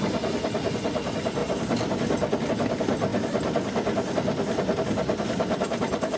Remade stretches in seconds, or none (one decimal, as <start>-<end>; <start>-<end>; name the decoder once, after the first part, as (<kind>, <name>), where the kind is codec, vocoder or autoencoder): none